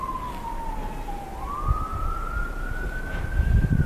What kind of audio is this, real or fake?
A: real